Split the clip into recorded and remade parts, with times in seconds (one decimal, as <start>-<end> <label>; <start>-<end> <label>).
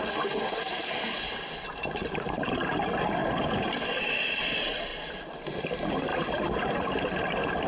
0.0-3.2 recorded; 3.2-4.5 remade; 4.5-4.9 recorded; 4.9-5.6 remade; 5.6-6.1 recorded; 6.1-6.9 remade; 6.9-7.7 recorded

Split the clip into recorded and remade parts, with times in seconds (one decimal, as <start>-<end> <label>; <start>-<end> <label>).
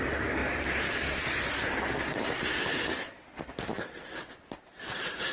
0.0-5.3 recorded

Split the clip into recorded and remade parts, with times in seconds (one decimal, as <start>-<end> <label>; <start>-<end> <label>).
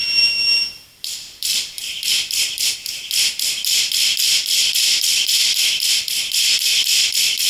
0.0-1.8 remade; 1.8-3.9 recorded; 3.9-7.5 remade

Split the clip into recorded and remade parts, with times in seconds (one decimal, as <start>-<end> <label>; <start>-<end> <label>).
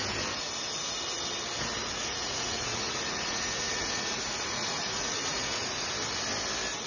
0.0-1.8 recorded; 1.8-5.9 remade; 5.9-6.9 recorded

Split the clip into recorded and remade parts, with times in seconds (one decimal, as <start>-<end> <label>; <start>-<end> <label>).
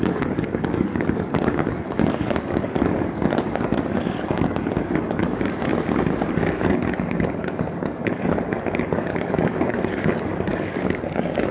0.0-5.7 remade; 5.7-6.3 recorded; 6.3-11.5 remade